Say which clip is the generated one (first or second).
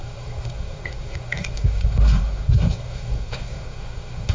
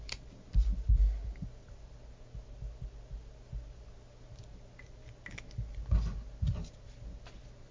first